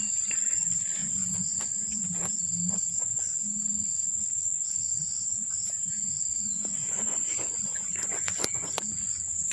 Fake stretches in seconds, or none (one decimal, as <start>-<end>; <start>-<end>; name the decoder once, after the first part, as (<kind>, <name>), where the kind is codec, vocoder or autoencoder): 1.0-2.1 (vocoder, Vocos); 4.9-9.1